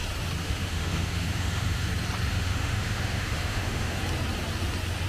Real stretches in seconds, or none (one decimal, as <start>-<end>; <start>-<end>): 0.0-0.4; 1.9-2.3; 4.0-5.1